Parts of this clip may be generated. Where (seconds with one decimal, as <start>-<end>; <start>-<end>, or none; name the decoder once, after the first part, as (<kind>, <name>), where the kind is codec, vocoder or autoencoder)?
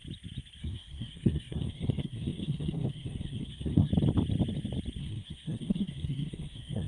0.6-3.9 (codec, SNAC); 5.0-6.9